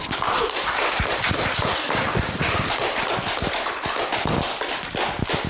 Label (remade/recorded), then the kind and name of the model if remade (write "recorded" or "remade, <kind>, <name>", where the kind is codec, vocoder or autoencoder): recorded